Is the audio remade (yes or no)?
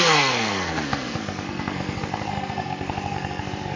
yes